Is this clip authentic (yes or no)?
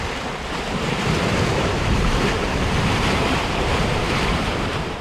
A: no